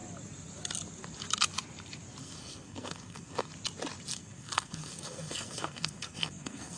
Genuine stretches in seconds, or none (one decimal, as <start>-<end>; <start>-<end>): 0.0-2.2; 3.5-4.1